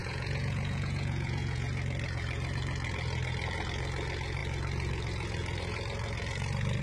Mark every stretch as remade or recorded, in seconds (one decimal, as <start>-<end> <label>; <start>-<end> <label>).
0.0-1.7 remade; 1.7-6.8 recorded